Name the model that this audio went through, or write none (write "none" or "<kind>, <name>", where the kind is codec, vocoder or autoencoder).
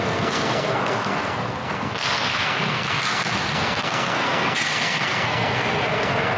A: codec, SNAC